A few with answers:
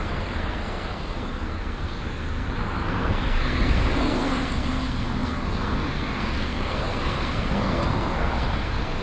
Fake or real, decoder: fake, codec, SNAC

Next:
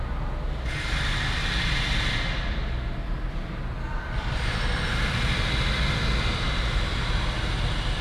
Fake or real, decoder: real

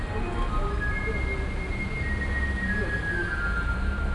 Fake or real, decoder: real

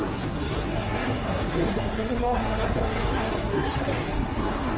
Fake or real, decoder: fake, codec, SNAC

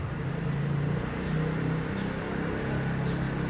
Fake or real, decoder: real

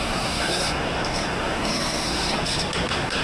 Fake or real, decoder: fake, codec, SNAC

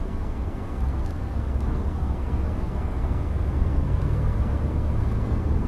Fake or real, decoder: fake, codec, SNAC